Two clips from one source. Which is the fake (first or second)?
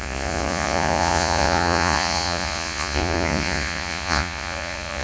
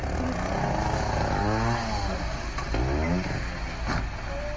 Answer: first